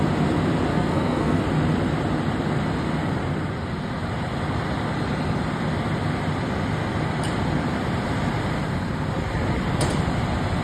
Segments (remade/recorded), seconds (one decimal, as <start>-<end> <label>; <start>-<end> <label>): 0.0-0.7 recorded; 0.7-1.4 remade; 1.4-10.6 recorded